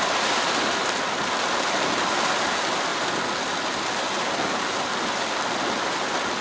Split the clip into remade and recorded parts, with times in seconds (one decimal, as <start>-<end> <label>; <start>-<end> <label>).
0.0-6.4 recorded